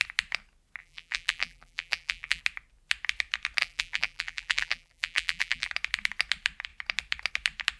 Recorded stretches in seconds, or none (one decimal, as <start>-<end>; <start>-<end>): 0.0-0.8; 2.4-3.6; 5.7-7.8